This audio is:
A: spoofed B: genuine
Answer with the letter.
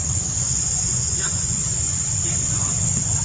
A